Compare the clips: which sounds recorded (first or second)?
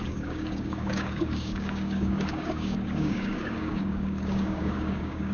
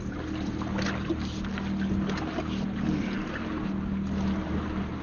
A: second